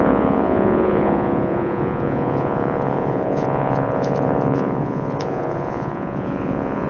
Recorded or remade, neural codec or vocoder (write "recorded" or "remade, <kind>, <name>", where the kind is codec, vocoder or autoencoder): remade, vocoder, Vocos